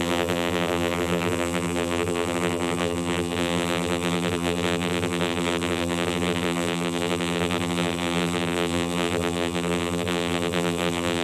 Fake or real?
fake